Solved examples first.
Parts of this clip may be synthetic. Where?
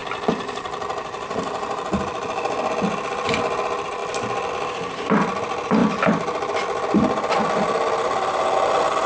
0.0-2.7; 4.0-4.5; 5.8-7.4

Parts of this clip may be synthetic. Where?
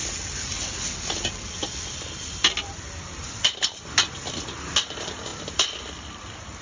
2.6-6.6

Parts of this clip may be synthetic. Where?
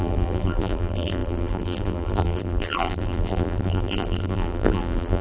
0.0-5.2